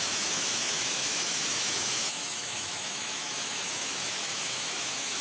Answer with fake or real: fake